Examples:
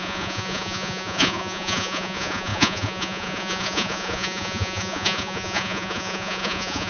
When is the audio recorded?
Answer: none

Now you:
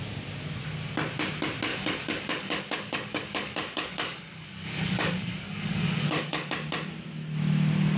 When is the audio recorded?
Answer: 0.0-1.7; 6.5-8.0

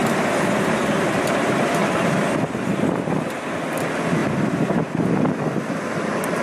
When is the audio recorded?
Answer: 4.2-6.0

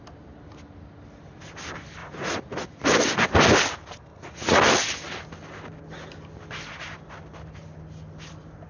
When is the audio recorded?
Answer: 0.0-2.0; 2.8-4.1; 4.6-8.7